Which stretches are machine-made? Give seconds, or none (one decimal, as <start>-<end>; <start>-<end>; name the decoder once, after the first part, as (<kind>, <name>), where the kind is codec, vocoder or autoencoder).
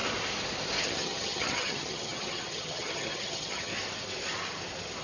0.8-3.7 (vocoder, HiFi-GAN)